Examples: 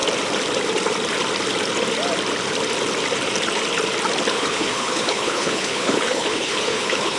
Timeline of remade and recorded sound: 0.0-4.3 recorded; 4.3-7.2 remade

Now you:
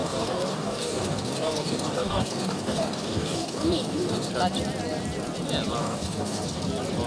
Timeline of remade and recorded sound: 0.0-4.3 remade; 4.3-5.8 recorded; 5.8-6.6 remade; 6.6-7.1 recorded